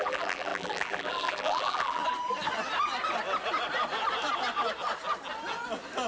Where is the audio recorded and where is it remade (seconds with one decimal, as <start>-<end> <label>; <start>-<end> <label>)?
0.0-2.0 remade; 2.0-6.1 recorded